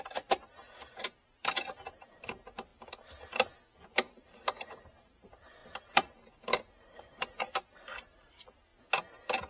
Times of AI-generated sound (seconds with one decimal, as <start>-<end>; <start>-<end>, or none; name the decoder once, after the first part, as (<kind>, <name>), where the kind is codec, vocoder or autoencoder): 0.0-2.7 (vocoder, BigVGAN v2); 4.1-8.7